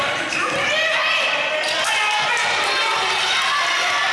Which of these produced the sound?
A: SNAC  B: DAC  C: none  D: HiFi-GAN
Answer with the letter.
C